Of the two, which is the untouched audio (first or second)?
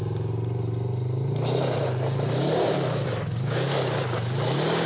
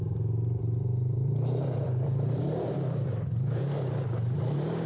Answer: first